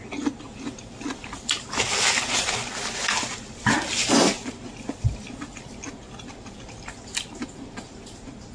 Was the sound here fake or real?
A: real